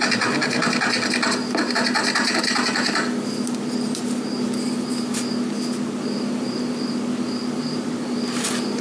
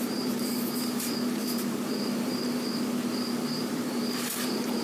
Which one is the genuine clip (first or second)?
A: first